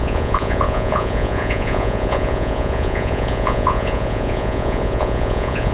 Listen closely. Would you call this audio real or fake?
fake